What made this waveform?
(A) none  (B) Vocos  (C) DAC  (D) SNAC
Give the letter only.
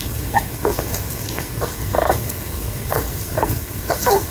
D